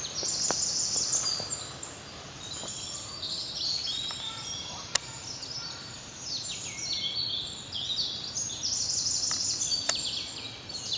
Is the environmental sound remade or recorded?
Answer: recorded